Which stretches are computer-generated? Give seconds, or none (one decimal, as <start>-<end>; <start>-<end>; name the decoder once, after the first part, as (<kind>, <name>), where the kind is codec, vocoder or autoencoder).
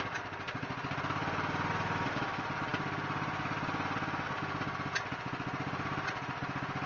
none